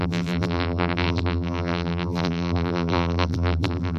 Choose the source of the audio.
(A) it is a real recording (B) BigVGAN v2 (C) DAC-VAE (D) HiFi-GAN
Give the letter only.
B